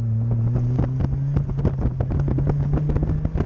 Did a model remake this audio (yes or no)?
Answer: no